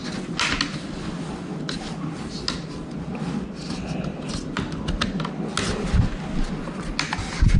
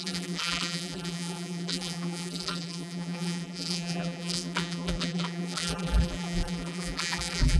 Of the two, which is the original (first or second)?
first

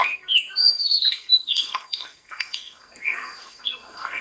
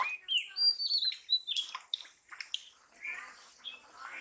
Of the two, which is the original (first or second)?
second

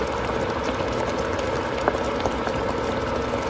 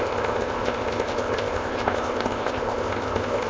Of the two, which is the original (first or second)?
first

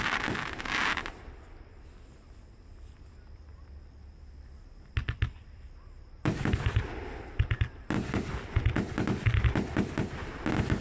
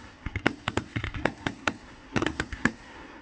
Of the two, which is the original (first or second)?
first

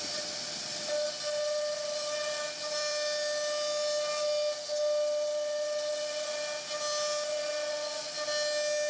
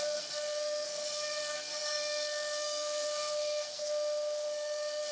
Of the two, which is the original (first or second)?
first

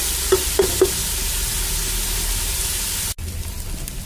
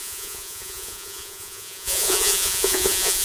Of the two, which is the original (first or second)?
first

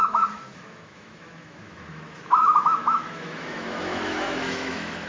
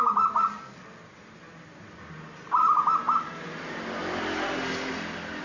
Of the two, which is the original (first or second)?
second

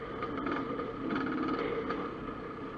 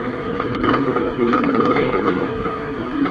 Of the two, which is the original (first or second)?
first